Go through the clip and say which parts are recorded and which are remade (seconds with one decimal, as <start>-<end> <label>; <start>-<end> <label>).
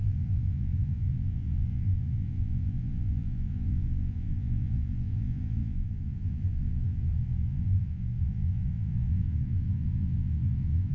0.0-10.9 remade